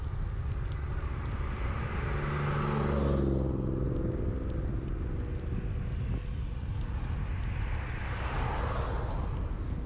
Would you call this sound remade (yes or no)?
no